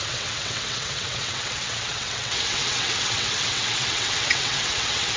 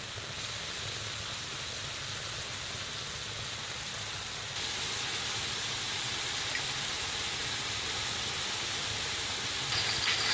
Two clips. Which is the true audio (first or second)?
second